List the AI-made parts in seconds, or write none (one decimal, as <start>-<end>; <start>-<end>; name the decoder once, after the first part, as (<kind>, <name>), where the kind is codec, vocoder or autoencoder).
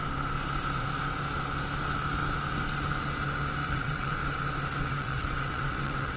3.7-4.2 (vocoder, WaveNeXt); 4.9-6.2